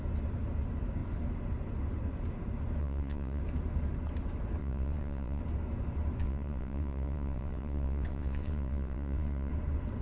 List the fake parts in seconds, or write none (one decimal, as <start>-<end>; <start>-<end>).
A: 2.8-3.4; 4.6-5.4; 6.2-9.5